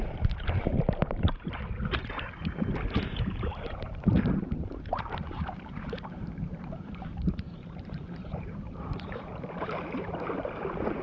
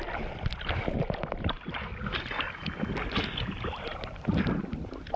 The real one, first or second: second